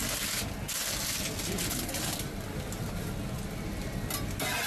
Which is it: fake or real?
real